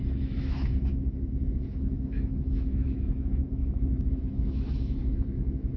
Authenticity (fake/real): fake